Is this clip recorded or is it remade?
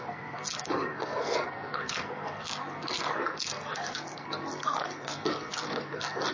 remade